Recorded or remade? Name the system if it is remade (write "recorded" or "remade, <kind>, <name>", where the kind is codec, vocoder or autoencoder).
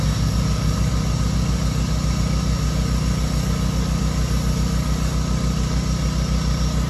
recorded